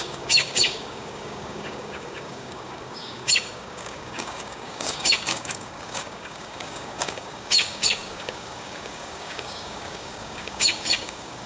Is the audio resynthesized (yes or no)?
yes